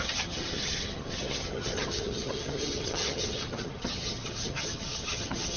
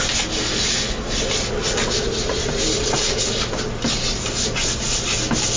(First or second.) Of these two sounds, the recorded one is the second